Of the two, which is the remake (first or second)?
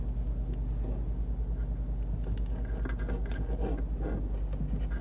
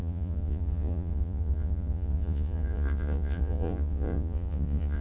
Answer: second